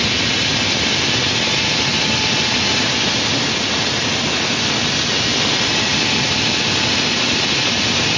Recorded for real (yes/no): yes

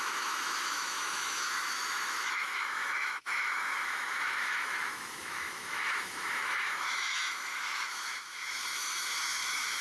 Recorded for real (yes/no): no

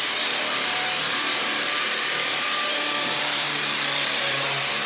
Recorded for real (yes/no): no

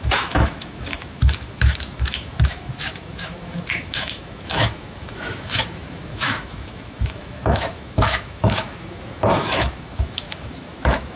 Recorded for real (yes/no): no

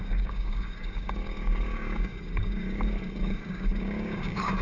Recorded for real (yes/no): no